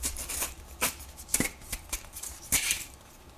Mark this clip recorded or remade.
remade